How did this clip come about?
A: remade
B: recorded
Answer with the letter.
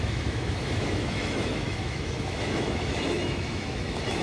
A